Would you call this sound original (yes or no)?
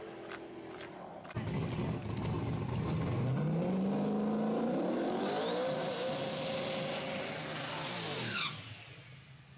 yes